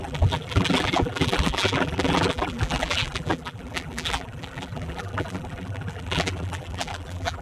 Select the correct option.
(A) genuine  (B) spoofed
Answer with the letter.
B